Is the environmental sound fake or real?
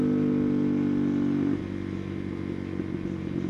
real